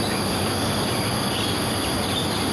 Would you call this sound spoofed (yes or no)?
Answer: no